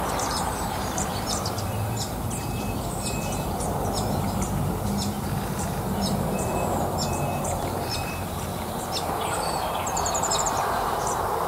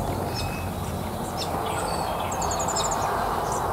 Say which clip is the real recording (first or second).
second